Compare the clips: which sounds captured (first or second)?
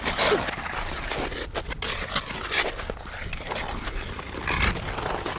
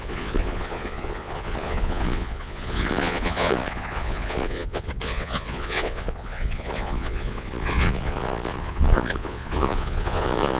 first